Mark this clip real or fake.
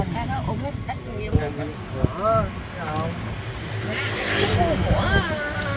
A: real